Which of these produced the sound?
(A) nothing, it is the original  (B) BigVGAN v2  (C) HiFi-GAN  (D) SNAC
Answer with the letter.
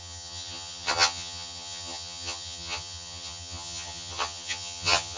C